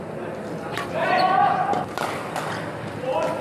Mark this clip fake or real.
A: fake